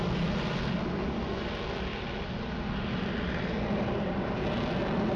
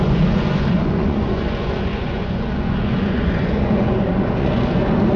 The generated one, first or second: second